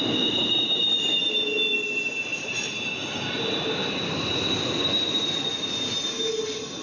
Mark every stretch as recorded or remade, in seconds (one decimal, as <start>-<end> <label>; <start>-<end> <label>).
0.0-2.3 recorded; 2.3-4.3 remade; 4.3-6.8 recorded